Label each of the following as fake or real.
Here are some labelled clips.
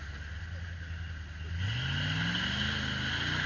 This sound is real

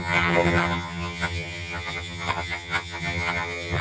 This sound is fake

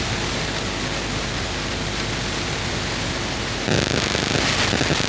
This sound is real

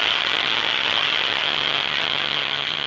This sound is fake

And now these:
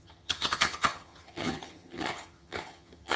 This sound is fake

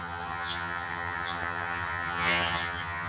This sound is fake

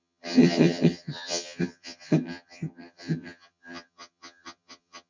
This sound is fake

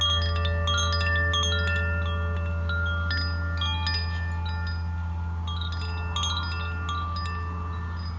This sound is real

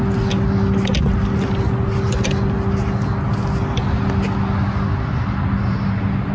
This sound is real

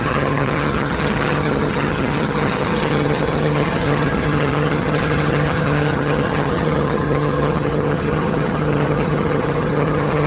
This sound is fake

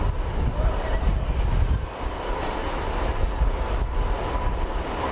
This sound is real